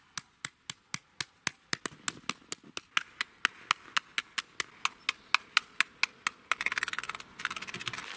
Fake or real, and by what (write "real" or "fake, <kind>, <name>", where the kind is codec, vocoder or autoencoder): real